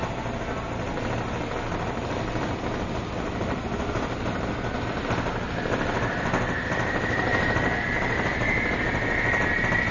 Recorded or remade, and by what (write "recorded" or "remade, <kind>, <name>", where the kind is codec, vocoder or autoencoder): recorded